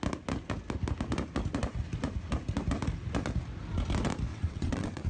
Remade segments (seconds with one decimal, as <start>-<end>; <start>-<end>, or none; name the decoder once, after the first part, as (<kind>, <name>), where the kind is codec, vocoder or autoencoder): 4.3-5.1 (vocoder, WaveNeXt)